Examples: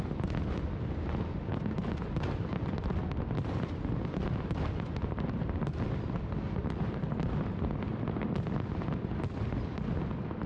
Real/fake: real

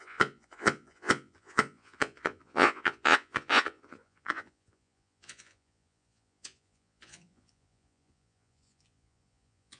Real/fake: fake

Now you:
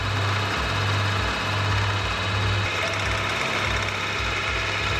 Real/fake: real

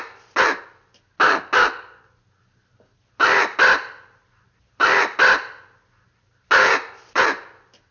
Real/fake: real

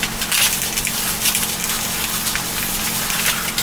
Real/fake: fake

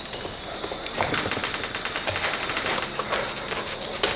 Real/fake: real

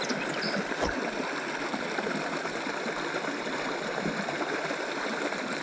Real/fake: real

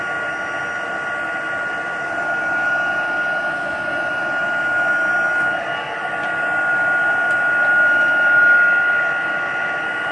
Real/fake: real